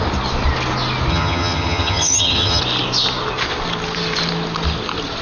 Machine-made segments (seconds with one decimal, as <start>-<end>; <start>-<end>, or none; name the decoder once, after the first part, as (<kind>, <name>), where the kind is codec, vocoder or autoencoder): 1.1-2.6 (vocoder, HiFi-GAN)